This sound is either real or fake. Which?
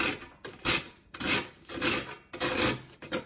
real